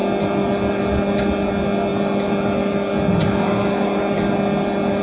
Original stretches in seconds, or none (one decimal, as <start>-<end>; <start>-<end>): 0.0-5.0